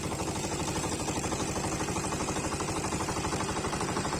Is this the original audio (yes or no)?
yes